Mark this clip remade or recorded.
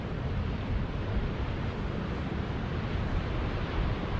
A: recorded